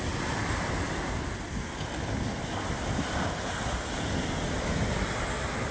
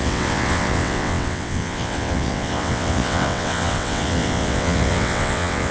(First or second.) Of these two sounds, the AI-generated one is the second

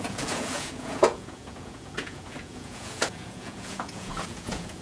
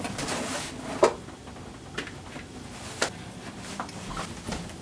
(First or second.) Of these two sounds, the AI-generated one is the first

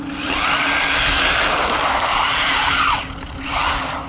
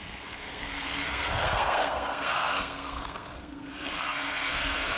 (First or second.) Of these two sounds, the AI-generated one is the second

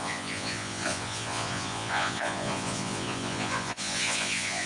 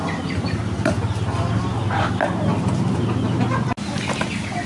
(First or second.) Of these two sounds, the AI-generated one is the first